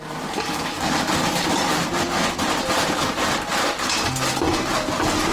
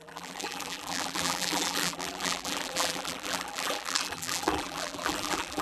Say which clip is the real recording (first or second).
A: first